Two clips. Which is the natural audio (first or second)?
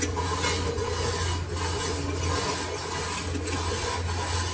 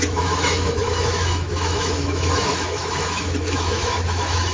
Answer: first